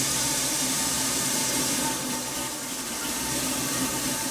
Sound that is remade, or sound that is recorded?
remade